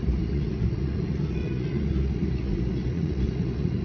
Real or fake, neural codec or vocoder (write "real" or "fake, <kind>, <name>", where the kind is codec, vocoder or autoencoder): fake, vocoder, Vocos